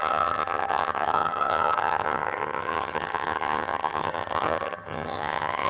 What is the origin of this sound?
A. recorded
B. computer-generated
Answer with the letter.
B